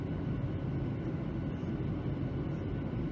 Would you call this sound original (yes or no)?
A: yes